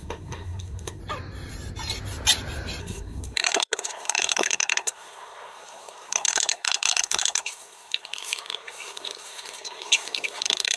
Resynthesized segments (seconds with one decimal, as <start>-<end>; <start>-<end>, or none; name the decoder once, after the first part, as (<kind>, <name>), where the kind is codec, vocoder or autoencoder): 0.0-1.0 (codec, SNAC); 2.8-10.8